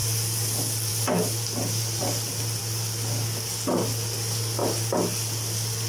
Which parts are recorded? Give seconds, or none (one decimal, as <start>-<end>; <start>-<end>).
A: 0.0-5.9